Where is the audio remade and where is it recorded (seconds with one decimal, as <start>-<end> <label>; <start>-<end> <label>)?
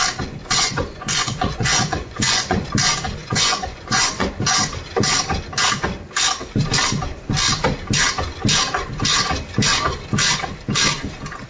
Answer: 0.0-0.4 recorded; 0.4-2.7 remade; 2.7-3.2 recorded; 3.2-4.3 remade; 4.3-11.5 recorded